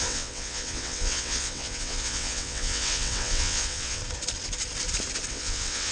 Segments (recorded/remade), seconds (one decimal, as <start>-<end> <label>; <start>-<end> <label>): 0.0-4.0 remade; 4.0-5.3 recorded; 5.3-5.9 remade